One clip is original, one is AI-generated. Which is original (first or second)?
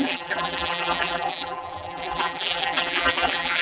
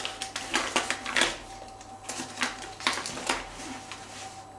second